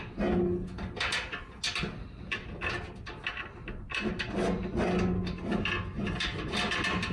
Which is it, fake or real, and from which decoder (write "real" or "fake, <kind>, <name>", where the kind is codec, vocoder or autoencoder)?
real